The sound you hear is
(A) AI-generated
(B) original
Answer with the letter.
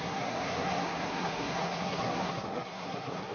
A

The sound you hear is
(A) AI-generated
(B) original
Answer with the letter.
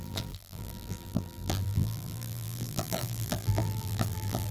A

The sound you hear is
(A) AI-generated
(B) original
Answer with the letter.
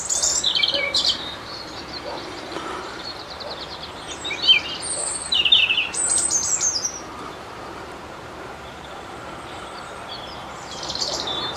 A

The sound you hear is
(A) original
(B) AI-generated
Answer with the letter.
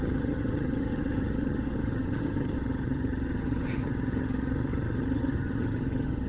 B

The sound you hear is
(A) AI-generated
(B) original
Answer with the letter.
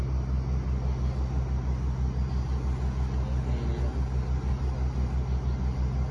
B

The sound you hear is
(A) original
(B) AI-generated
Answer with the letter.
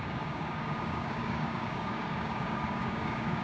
B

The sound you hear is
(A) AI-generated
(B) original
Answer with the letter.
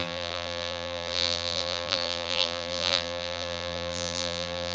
A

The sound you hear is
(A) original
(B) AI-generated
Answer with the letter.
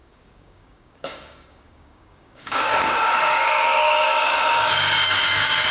B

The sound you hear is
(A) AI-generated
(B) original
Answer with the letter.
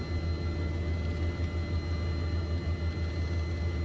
B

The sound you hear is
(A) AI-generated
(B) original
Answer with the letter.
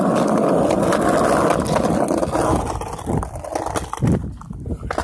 B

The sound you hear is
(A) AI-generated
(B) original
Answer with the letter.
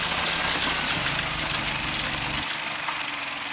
B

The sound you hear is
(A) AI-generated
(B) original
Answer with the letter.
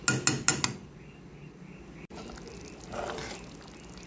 B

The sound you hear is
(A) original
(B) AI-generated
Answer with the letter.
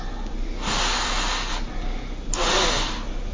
A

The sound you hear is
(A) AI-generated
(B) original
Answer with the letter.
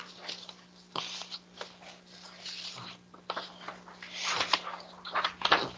A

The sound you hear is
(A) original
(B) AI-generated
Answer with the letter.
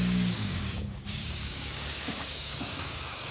B